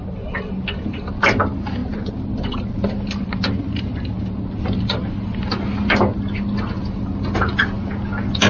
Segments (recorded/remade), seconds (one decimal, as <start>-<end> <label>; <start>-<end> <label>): 0.0-8.5 recorded